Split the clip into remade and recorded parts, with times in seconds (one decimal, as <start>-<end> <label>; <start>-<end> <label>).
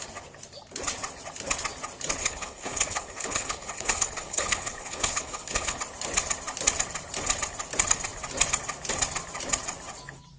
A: 0.0-2.2 recorded; 2.2-5.8 remade; 5.8-10.4 recorded